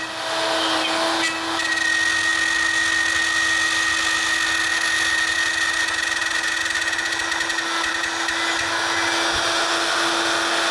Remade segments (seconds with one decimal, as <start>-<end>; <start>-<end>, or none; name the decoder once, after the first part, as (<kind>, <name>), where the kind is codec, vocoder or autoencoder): none